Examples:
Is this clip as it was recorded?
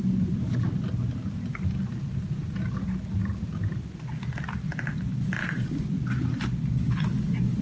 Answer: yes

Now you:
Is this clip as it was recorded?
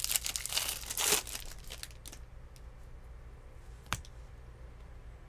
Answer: yes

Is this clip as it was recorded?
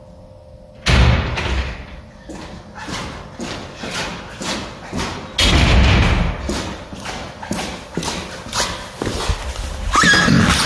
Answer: yes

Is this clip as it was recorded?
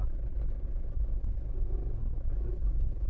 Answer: yes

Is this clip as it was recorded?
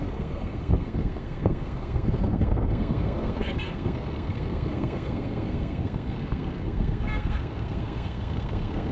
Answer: no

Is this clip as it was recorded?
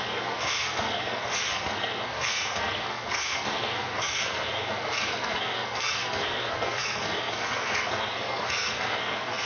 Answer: no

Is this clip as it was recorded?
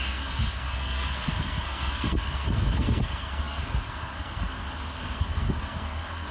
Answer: no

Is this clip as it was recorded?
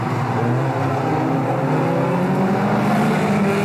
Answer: yes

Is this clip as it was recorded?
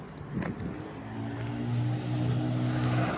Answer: yes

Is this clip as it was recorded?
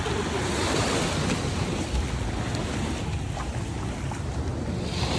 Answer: yes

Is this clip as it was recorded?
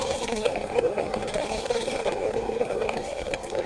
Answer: no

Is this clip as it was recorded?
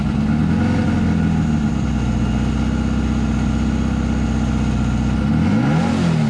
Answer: yes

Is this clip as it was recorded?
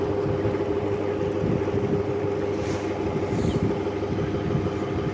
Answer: yes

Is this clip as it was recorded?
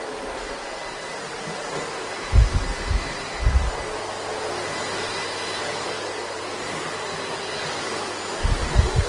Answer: yes